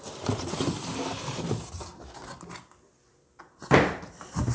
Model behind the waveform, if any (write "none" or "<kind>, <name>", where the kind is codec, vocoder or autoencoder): none